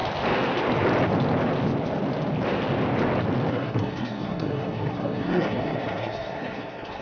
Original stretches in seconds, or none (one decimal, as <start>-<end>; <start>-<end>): 0.0-3.5